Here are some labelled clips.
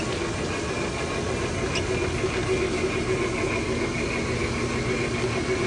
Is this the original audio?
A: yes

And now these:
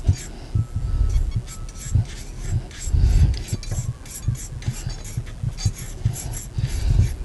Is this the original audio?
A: yes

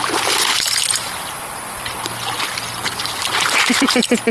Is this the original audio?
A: yes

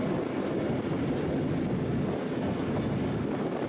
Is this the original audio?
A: yes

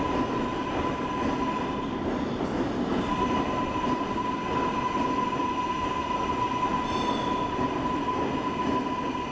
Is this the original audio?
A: yes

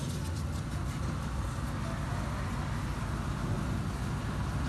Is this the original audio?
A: yes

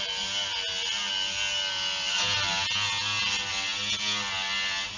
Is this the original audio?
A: yes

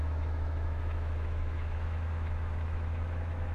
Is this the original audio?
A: no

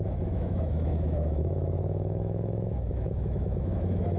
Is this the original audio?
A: no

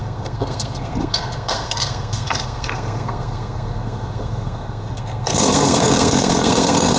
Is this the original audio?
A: no